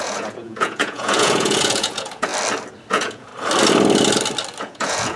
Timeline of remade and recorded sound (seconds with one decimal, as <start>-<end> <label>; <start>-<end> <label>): 0.0-2.3 remade; 2.3-2.9 recorded; 2.9-3.3 remade; 3.3-4.6 recorded; 4.6-5.2 remade